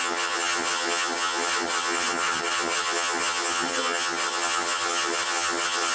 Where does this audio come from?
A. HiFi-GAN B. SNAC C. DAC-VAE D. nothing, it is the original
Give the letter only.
A